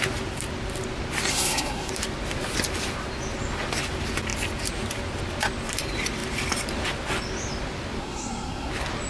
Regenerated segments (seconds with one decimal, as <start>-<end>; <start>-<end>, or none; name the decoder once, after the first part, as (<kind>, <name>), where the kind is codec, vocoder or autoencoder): 1.3-1.9 (codec, SNAC); 8.0-8.7

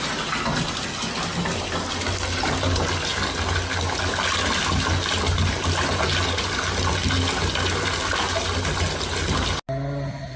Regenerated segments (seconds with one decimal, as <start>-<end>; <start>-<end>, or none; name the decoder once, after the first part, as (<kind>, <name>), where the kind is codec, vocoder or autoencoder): none